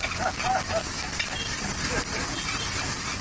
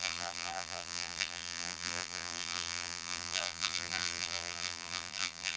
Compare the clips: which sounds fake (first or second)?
second